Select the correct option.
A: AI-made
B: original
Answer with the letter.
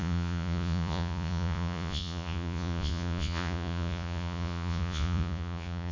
A